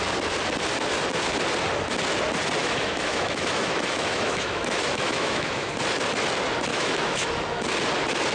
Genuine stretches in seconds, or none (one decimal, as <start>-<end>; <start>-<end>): 0.0-2.6; 5.7-6.7; 7.3-8.3